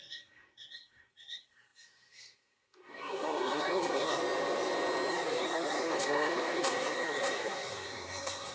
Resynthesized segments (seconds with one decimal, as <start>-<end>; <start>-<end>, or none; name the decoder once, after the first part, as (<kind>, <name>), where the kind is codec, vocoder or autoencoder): 0.0-4.2 (codec, SNAC); 5.1-8.5